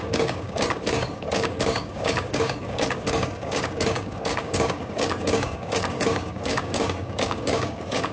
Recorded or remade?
remade